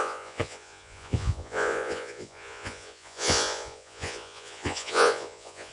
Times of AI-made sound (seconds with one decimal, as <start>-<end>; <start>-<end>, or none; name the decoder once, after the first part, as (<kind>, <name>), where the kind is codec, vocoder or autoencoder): 0.0-5.7 (vocoder, Vocos)

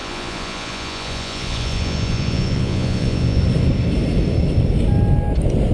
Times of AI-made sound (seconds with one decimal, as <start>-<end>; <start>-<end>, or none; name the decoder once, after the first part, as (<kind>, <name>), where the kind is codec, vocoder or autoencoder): 0.0-3.4 (vocoder, Vocos)

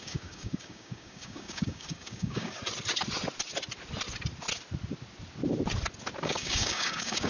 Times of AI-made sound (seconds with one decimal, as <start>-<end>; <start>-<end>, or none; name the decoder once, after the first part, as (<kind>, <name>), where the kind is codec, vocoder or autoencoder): 0.0-2.6 (codec, DAC); 6.2-7.3

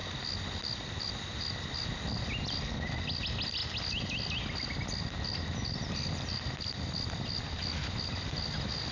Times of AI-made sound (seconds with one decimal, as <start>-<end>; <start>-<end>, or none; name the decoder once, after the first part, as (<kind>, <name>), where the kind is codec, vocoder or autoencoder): none

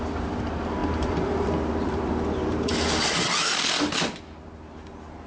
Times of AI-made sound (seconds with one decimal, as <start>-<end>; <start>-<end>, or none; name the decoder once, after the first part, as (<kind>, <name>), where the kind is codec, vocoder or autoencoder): 0.8-4.0 (vocoder, BigVGAN v2)